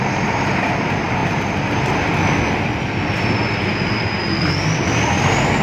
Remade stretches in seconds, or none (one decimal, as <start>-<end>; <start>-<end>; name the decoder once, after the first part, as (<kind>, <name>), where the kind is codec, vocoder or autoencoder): none